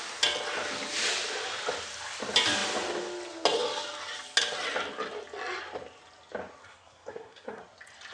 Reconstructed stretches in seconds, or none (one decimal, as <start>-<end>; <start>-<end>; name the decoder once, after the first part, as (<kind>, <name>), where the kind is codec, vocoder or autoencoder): 6.6-7.6 (codec, SNAC)